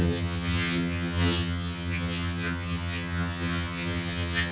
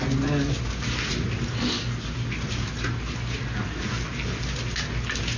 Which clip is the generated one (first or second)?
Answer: first